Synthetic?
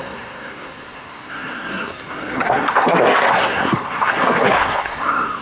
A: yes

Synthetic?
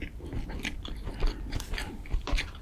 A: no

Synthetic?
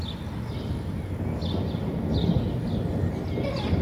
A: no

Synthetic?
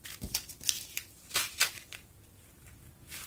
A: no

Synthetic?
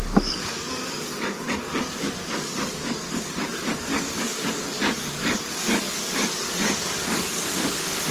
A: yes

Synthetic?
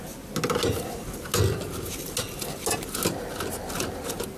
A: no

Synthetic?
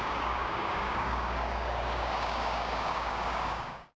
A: yes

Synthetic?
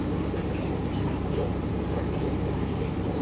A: yes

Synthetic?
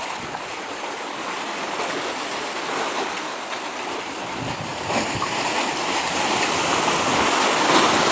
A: no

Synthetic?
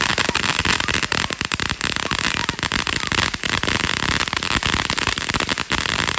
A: no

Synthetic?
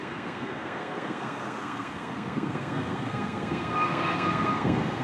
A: yes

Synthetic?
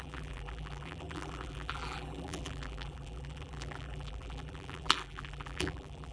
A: yes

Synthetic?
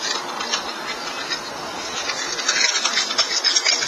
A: no